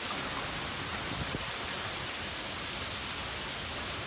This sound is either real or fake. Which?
real